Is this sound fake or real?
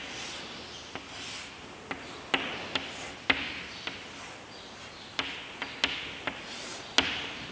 real